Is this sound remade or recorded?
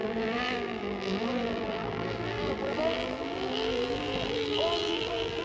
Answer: remade